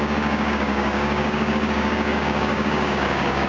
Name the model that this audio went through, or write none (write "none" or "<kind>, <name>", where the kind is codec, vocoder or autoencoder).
codec, DAC